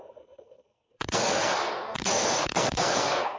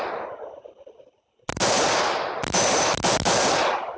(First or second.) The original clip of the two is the second